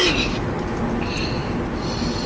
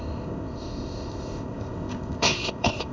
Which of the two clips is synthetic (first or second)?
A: second